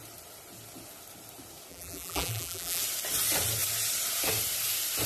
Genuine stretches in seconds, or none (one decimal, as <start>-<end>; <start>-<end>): 0.0-1.7; 2.8-5.1